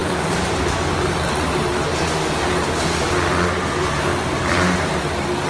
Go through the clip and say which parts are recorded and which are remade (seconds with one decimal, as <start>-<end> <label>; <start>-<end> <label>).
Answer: 0.0-5.5 recorded